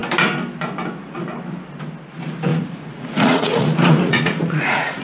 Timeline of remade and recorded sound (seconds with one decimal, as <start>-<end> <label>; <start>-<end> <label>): 0.0-2.5 recorded; 2.5-5.0 remade